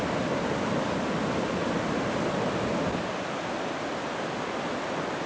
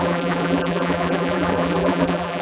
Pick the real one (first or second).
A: first